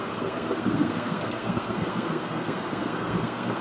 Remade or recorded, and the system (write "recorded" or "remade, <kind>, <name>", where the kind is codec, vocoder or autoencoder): remade, codec, SNAC